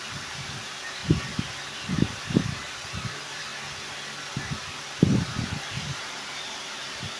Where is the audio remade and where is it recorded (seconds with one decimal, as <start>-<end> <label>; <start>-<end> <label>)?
0.0-1.0 remade; 1.0-1.6 recorded; 1.6-3.5 remade; 3.5-4.3 recorded; 4.3-7.2 remade